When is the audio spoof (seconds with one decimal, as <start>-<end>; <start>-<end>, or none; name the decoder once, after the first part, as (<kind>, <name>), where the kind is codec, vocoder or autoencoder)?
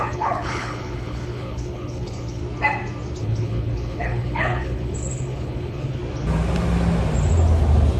0.0-2.4 (codec, HILCodec); 3.2-6.0